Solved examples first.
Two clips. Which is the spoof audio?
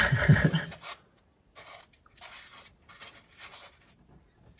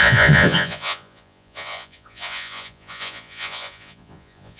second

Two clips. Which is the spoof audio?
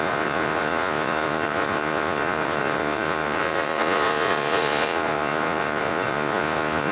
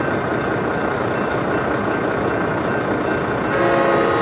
first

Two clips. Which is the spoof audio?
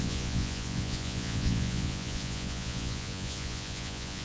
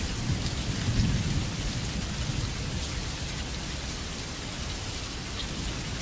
first